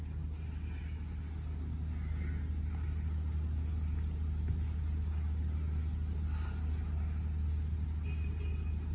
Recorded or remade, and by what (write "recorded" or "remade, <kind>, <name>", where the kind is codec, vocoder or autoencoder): recorded